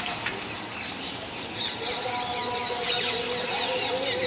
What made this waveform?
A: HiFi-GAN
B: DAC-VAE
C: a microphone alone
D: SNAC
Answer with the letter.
C